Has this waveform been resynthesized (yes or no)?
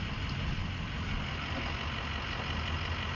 no